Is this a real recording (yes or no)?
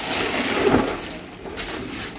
yes